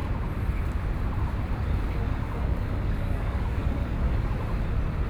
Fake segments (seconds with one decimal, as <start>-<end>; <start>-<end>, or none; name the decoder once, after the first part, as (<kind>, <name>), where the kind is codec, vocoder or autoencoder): 2.1-4.3 (codec, DAC)